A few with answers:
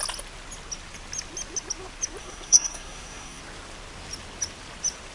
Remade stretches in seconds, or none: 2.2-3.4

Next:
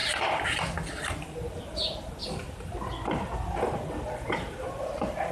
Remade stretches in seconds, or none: 2.2-2.9

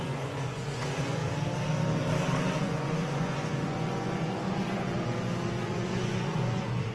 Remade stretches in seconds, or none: 0.0-1.2; 2.6-6.9

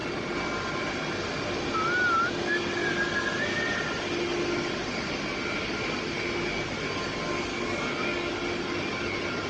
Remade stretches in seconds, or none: 7.5-8.3

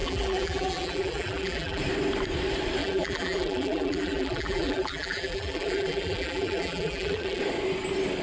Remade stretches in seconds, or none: 0.0-1.8; 2.8-7.4